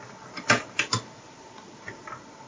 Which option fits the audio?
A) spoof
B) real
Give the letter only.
B